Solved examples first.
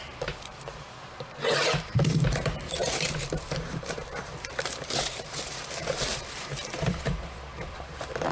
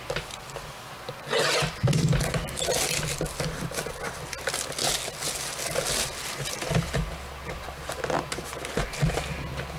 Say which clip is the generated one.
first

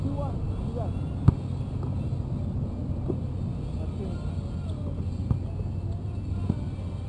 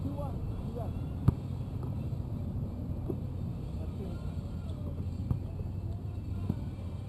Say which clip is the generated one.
second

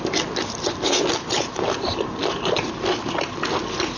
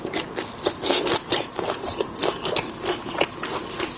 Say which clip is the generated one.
first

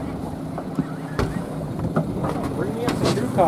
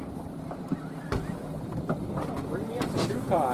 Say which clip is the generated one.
second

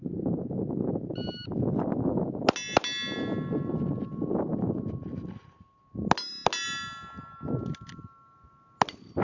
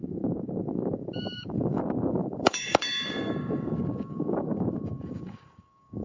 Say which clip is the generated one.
second